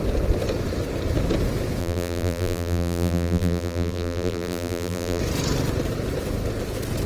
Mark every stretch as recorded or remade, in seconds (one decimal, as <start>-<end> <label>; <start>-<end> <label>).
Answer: 0.0-1.8 recorded; 1.8-5.2 remade; 5.2-7.1 recorded